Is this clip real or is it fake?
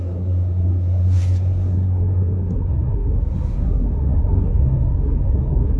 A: fake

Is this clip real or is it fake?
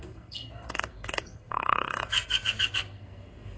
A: fake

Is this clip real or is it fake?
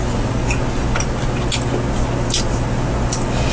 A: real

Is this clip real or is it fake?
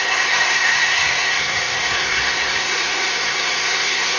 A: fake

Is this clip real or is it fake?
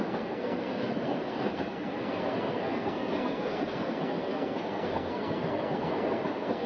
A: fake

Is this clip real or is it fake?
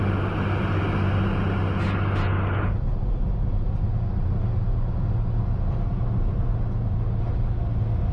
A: real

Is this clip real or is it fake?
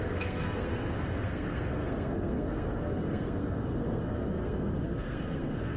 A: fake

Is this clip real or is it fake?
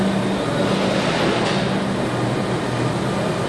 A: real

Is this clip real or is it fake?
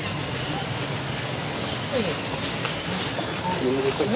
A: real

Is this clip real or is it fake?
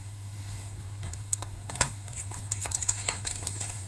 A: fake